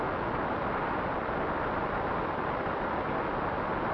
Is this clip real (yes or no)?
yes